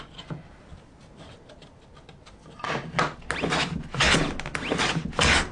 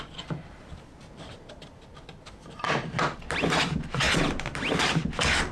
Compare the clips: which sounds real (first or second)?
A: first